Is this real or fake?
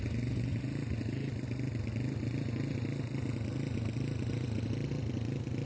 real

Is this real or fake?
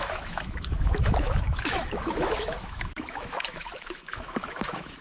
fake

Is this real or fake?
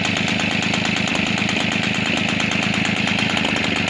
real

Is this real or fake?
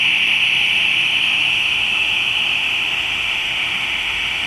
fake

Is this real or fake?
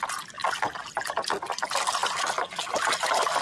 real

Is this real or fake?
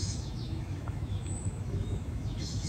fake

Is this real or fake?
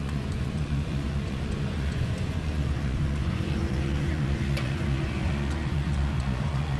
fake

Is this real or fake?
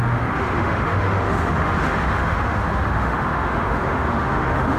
fake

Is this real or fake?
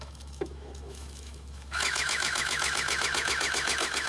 fake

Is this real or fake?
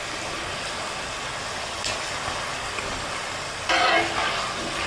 real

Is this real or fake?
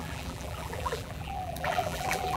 fake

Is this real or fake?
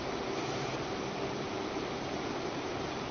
fake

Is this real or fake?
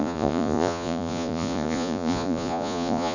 fake